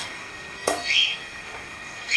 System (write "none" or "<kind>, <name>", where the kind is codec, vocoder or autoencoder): codec, SNAC